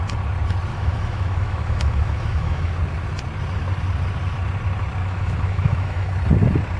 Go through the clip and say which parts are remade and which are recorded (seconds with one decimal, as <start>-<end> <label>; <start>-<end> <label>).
0.0-0.7 recorded; 0.7-2.7 remade; 2.7-5.0 recorded; 5.0-6.1 remade; 6.1-6.8 recorded